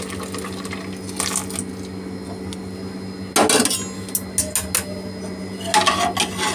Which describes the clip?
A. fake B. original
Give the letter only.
B